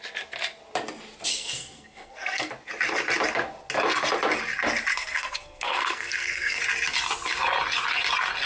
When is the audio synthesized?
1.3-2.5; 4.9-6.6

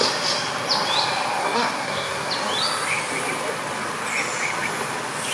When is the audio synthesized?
1.4-2.3

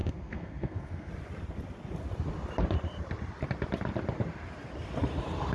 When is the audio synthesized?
0.0-1.1

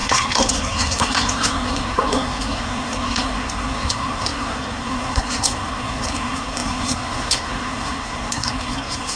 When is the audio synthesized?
0.0-9.2

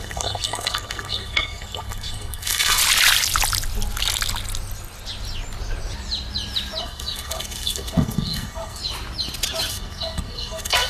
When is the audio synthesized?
0.0-2.8; 6.8-8.8; 9.7-10.9

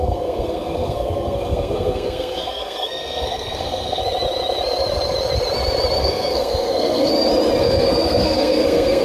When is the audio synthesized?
0.0-4.0; 6.0-7.1; 7.6-9.0